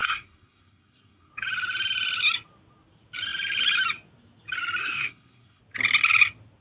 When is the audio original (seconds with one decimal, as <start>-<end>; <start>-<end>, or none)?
1.3-4.8; 5.6-6.6